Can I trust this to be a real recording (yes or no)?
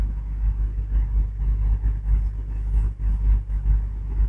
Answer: yes